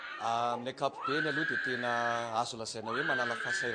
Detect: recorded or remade recorded